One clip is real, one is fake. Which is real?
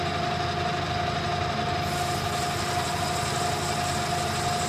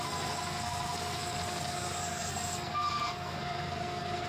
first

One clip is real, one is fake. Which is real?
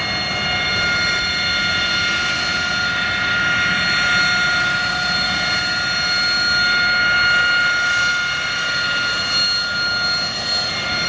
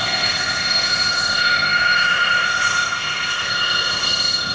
first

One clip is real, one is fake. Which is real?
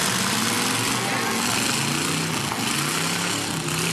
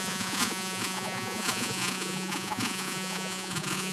first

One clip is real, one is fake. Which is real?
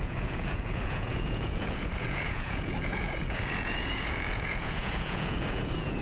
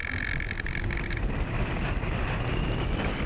second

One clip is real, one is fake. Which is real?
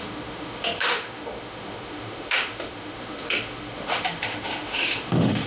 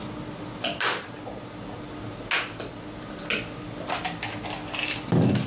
second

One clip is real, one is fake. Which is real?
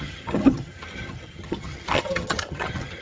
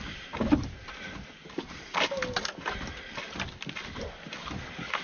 second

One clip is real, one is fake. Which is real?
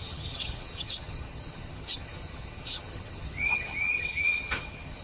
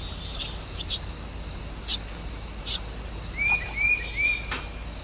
second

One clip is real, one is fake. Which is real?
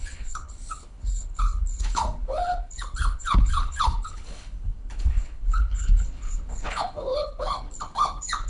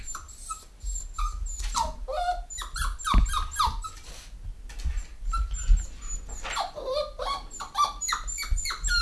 second